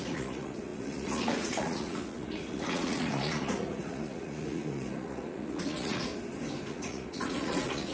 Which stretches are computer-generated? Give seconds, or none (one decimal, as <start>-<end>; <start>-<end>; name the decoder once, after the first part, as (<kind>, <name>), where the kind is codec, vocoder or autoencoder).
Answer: 0.0-6.1 (vocoder, Vocos); 6.7-7.9